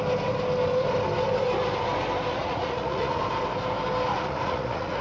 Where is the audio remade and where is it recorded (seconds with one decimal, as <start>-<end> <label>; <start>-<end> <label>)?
0.0-2.3 recorded; 2.3-3.2 remade; 3.2-4.1 recorded; 4.1-5.0 remade